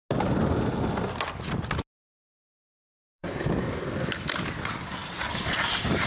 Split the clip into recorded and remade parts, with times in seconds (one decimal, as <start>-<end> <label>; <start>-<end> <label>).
0.0-2.5 recorded; 2.5-3.3 remade; 3.3-6.1 recorded